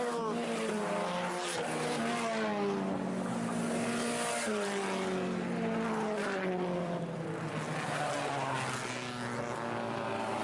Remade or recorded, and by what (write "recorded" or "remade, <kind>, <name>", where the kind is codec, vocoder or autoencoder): recorded